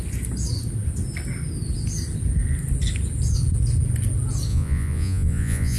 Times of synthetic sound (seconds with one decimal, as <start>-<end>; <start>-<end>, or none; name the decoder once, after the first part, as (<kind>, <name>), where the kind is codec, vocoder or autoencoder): 4.5-5.8 (vocoder, Vocos)